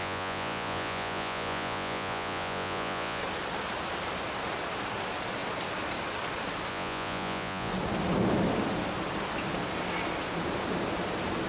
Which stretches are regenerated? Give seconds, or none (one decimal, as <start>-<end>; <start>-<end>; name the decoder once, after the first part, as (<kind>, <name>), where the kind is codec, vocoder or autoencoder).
0.0-3.2 (vocoder, Vocos); 6.7-7.7